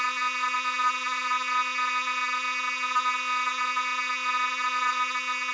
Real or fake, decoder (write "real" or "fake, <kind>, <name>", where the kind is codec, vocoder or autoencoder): fake, vocoder, Vocos